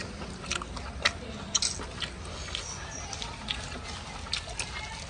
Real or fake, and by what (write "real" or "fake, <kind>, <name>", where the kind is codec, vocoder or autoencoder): real